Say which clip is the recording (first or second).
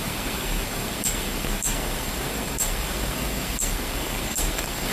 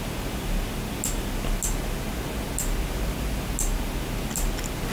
second